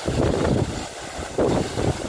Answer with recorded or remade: recorded